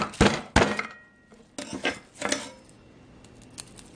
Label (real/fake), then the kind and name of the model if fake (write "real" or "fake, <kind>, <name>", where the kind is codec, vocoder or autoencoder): real